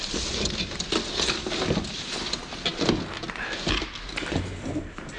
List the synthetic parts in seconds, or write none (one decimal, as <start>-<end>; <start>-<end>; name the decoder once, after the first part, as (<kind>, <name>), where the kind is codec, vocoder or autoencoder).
none